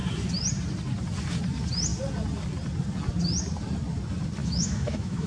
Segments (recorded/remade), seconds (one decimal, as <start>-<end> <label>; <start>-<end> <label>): 0.0-4.4 recorded; 4.4-5.3 remade